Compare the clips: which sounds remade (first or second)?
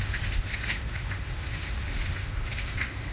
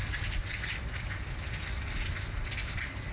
first